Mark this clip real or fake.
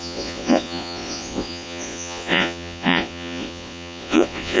fake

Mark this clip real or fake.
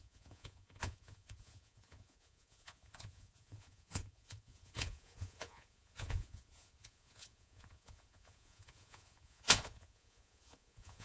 fake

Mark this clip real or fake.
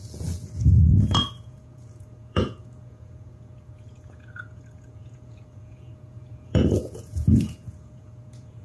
fake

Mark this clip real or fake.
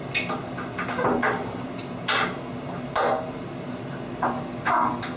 real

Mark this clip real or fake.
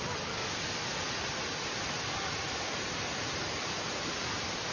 real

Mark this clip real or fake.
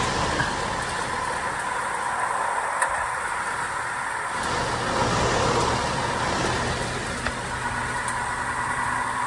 real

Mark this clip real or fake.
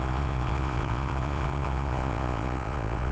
fake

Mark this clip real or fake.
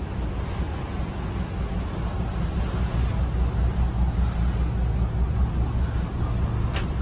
real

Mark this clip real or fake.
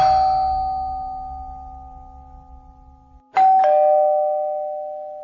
real